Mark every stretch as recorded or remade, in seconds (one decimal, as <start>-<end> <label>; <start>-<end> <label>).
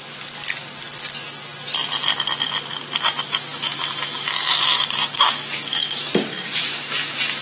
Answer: 0.0-3.5 recorded; 3.5-6.1 remade; 6.1-6.6 recorded; 6.6-7.4 remade